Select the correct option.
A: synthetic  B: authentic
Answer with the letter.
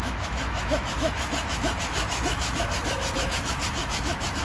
A